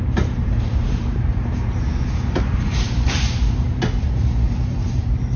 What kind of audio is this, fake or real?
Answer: fake